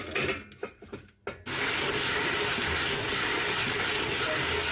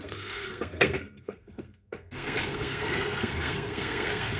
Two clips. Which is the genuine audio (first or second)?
first